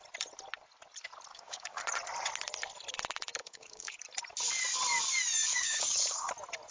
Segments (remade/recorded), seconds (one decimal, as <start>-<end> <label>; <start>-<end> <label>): 0.0-1.3 recorded; 1.3-1.8 remade; 1.8-3.4 recorded; 3.4-4.0 remade; 4.0-5.5 recorded; 5.5-6.3 remade; 6.3-6.7 recorded